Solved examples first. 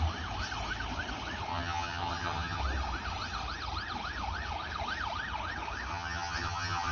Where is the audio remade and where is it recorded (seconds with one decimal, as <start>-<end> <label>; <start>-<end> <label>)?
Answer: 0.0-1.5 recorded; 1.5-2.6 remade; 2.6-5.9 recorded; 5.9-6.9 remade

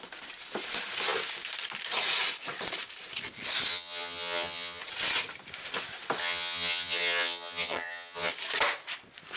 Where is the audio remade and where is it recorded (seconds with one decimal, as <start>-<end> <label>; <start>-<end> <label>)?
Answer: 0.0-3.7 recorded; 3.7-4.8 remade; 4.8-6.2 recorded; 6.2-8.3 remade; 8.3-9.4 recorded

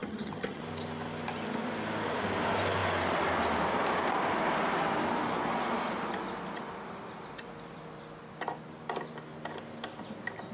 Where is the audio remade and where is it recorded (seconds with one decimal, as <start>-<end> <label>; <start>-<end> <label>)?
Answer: 0.0-0.6 remade; 0.6-10.5 recorded

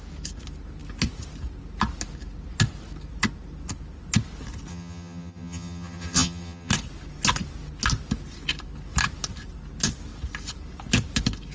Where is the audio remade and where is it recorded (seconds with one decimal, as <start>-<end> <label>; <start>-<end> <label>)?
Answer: 0.0-4.7 recorded; 4.7-6.7 remade; 6.7-11.5 recorded